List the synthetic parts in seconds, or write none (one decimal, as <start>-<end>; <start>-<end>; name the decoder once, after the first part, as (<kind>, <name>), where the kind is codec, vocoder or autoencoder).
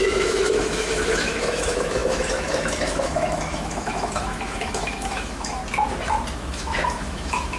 0.0-5.6 (autoencoder, DAC-VAE); 6.3-7.6